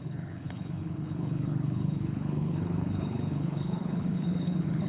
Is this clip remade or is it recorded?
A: remade